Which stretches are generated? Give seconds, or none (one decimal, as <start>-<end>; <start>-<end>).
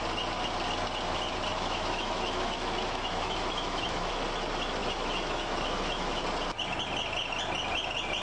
1.5-4.1; 4.8-6.2